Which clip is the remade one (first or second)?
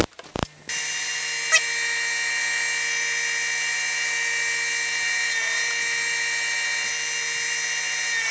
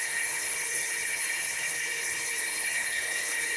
second